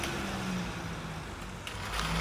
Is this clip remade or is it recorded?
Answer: recorded